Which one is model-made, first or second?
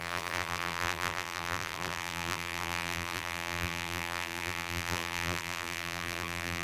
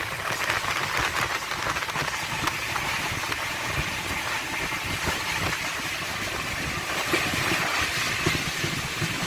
first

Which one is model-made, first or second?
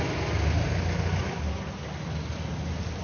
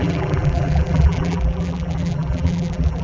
second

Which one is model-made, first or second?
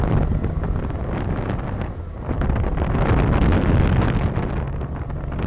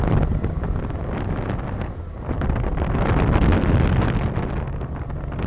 second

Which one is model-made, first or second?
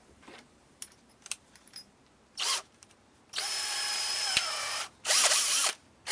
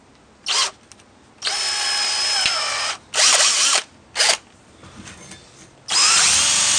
first